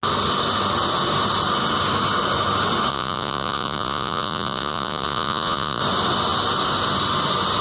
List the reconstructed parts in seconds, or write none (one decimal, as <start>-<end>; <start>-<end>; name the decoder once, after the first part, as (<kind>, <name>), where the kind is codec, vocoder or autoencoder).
2.9-5.8 (vocoder, Vocos)